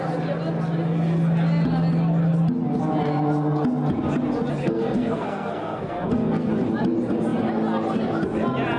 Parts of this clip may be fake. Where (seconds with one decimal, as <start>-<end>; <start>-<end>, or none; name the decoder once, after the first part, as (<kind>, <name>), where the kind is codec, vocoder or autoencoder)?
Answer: 4.6-6.5 (codec, SNAC)